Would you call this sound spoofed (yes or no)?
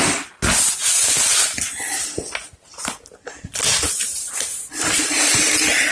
no